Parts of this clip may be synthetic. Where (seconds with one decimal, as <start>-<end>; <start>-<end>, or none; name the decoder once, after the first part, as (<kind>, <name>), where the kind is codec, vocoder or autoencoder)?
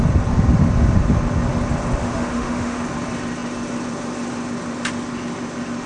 2.0-2.8 (autoencoder, DAC-VAE)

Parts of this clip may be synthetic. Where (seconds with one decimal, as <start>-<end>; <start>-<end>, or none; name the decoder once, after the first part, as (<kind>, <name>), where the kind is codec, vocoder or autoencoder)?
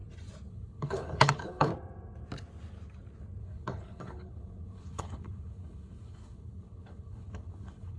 0.5-1.7 (codec, HILCodec); 3.4-8.0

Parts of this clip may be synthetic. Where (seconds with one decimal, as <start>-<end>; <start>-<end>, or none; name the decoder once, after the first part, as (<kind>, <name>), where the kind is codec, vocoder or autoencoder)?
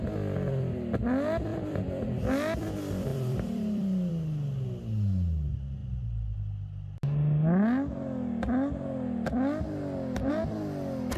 1.5-2.1 (vocoder, BigVGAN v2); 3.1-4.1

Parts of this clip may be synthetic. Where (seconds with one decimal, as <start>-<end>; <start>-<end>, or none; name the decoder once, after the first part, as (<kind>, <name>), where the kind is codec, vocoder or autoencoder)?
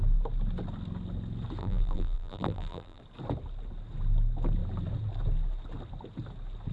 1.6-3.0 (vocoder, BigVGAN v2)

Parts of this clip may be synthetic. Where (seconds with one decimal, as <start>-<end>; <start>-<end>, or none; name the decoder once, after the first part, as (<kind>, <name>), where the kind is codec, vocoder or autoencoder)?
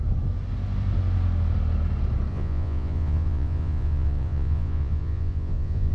2.3-5.9 (vocoder, Vocos)